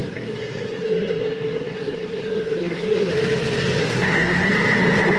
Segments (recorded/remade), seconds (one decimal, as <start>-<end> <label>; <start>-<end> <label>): 0.0-3.1 remade; 3.1-3.8 recorded; 3.8-4.5 remade; 4.5-5.2 recorded

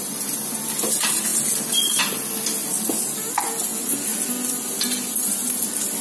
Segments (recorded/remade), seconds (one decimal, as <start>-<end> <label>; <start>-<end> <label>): 0.0-6.0 recorded

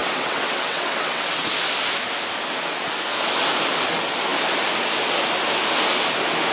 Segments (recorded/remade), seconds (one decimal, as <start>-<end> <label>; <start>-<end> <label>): 0.0-1.5 remade; 1.5-6.5 recorded

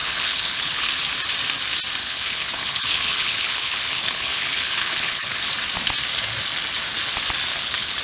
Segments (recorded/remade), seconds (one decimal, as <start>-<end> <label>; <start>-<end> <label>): 0.0-0.9 remade; 0.9-2.0 recorded; 2.0-5.5 remade; 5.5-7.5 recorded; 7.5-8.0 remade

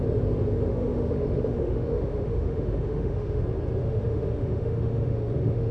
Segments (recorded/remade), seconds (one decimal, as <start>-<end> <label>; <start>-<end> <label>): 0.0-0.7 recorded; 0.7-3.4 remade; 3.4-3.8 recorded; 3.8-5.7 remade

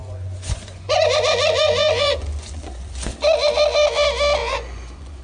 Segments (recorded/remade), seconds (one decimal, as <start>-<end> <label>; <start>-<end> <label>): 0.0-3.1 remade; 3.1-4.4 recorded; 4.4-5.2 remade

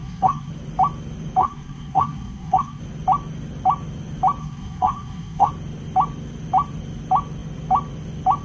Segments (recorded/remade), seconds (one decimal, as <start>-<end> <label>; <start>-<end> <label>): 0.0-0.5 remade; 0.5-1.4 recorded; 1.4-2.8 remade; 2.8-4.4 recorded; 4.4-5.5 remade; 5.5-8.4 recorded